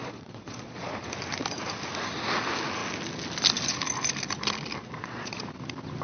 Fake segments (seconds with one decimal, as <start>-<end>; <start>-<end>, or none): 0.0-1.0; 4.8-5.4